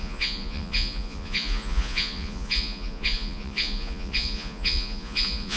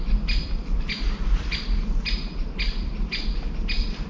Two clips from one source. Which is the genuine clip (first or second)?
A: second